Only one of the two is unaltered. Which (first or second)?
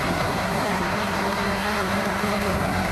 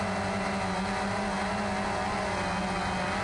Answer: second